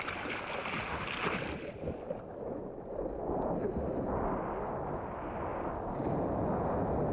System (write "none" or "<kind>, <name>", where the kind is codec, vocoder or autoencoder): none